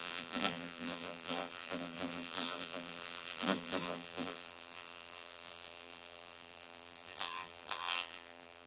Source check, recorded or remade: remade